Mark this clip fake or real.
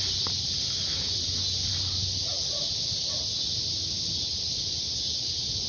real